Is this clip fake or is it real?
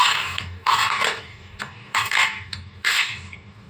fake